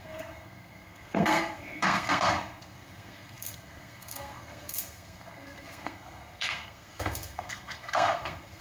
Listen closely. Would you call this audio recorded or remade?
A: remade